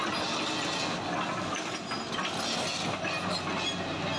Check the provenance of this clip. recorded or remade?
recorded